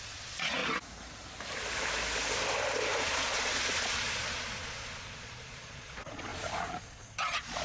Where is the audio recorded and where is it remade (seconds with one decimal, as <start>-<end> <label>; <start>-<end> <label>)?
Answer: 0.0-0.6 remade; 0.6-3.0 recorded; 3.0-7.6 remade